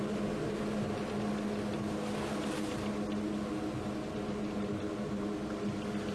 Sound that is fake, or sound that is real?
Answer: real